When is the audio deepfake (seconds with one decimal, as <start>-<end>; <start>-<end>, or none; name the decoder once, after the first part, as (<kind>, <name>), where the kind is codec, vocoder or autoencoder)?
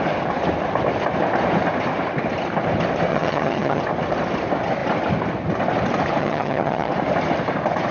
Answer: 3.1-3.8 (vocoder, HiFi-GAN); 6.2-6.9